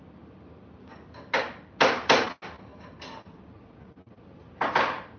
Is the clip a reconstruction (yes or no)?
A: no